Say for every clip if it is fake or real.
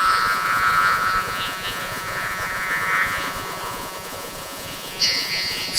fake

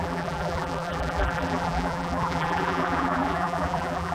fake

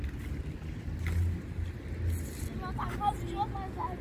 real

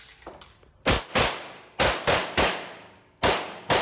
real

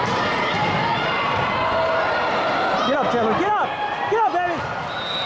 real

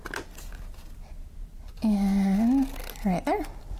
real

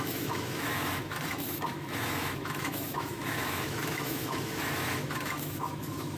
fake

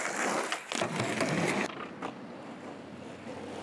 real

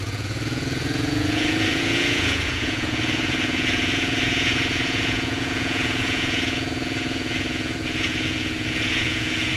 fake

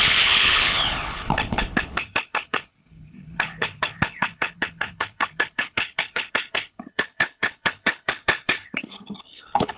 fake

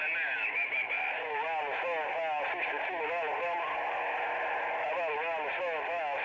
real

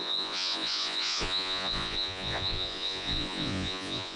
fake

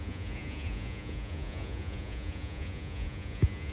fake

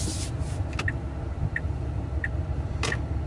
real